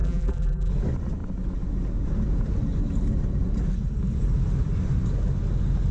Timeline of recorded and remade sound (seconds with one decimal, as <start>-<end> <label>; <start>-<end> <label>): 0.0-0.7 remade; 0.7-5.9 recorded